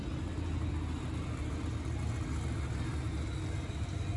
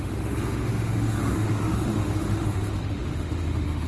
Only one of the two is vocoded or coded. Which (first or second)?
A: second